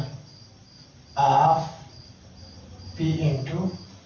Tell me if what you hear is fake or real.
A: real